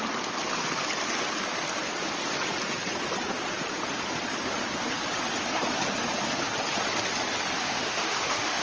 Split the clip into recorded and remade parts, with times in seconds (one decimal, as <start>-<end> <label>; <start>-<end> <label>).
0.0-7.6 recorded; 7.6-8.6 remade